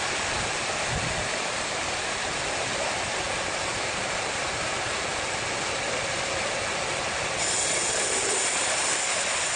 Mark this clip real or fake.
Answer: real